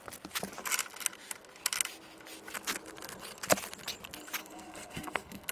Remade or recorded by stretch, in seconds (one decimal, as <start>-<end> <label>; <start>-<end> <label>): 0.0-4.4 recorded; 4.4-5.5 remade